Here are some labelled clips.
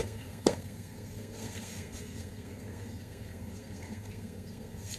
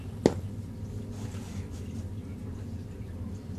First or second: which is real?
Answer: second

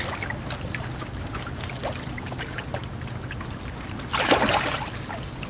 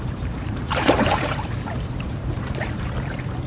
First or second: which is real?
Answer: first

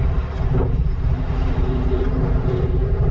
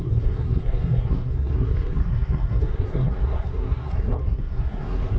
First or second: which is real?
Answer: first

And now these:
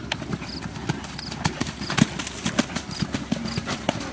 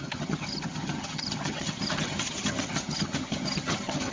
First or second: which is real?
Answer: first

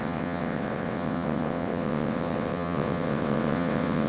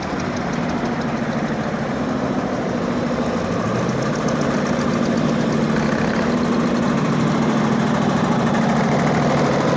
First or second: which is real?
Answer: second